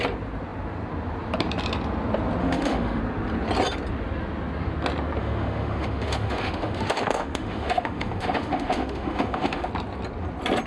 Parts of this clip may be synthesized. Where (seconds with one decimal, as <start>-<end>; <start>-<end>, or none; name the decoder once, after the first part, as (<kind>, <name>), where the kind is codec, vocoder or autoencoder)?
2.4-3.0 (autoencoder, DAC-VAE); 5.2-9.7